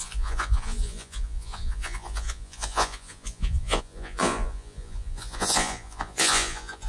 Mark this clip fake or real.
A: fake